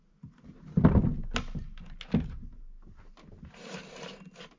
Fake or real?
real